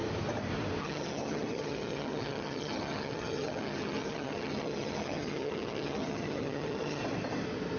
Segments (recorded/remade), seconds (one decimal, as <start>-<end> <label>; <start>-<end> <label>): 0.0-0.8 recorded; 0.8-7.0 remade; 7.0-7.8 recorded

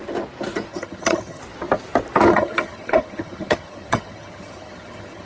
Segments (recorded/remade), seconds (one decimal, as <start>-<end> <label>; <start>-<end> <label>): 0.0-0.7 recorded; 0.7-1.4 remade; 1.4-2.3 recorded; 2.3-5.3 remade

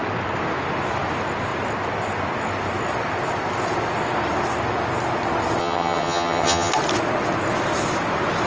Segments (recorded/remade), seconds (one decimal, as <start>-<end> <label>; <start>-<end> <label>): 0.0-5.6 recorded; 5.6-6.7 remade; 6.7-8.5 recorded

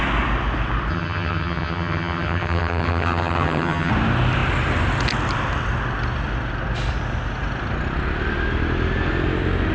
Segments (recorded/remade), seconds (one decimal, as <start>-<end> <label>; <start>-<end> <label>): 0.0-0.9 recorded; 0.9-3.9 remade; 3.9-9.7 recorded

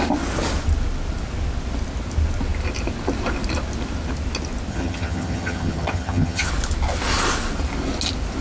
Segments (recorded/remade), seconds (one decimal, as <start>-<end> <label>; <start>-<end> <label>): 0.0-4.7 recorded; 4.7-6.5 remade; 6.5-8.4 recorded